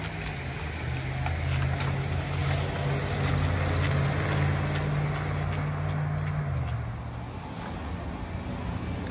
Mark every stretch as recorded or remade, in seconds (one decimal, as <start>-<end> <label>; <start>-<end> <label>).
0.0-9.1 recorded